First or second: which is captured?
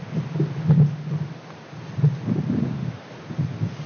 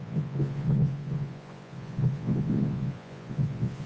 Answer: first